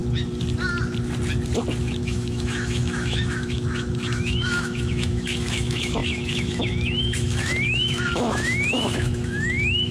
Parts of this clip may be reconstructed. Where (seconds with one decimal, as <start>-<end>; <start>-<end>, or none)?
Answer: 1.8-9.9